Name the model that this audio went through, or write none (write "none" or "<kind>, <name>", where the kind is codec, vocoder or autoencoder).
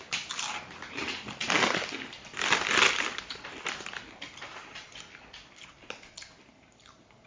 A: none